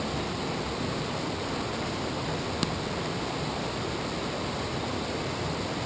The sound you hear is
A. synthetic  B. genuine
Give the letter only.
B